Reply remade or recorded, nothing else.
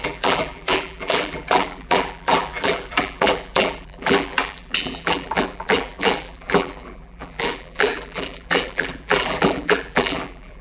remade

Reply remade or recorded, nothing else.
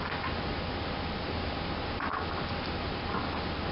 recorded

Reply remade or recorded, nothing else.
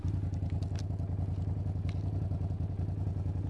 recorded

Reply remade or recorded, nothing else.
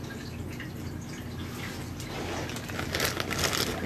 recorded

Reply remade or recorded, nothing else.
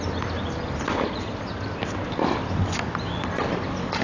recorded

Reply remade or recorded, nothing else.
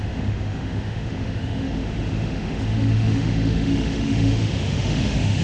remade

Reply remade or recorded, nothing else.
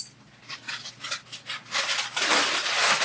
recorded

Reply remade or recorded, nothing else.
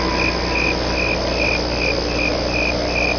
recorded